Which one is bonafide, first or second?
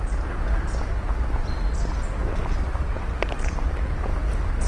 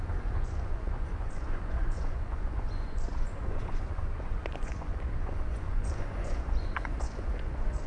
first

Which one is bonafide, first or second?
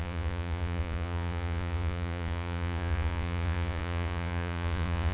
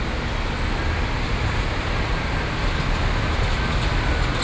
second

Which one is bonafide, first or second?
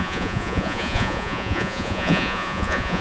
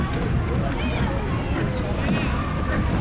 second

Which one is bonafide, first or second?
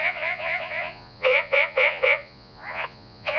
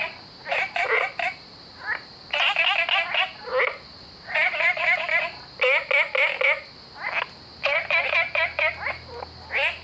second